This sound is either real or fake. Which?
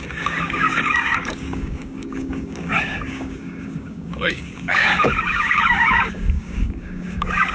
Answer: fake